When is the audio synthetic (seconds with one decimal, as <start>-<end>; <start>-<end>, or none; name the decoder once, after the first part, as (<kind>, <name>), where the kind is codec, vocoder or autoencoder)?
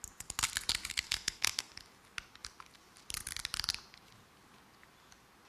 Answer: 0.9-1.7 (codec, SNAC)